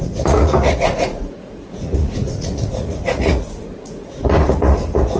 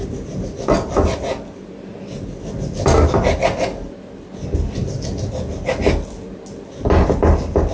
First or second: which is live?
second